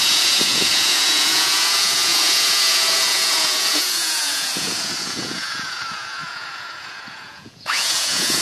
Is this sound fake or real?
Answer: fake